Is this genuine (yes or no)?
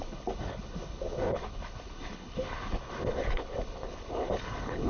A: no